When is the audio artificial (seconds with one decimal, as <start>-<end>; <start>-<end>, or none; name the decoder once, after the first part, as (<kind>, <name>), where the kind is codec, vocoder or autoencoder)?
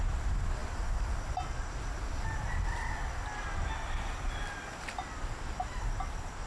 none